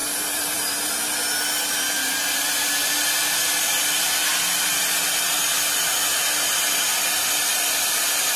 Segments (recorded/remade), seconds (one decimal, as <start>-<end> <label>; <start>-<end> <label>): 0.0-0.9 remade; 0.9-8.4 recorded